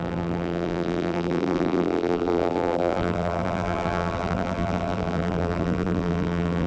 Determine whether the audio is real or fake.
fake